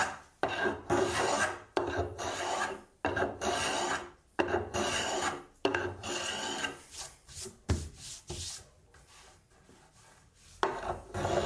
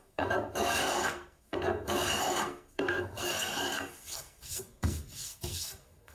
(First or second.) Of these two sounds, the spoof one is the second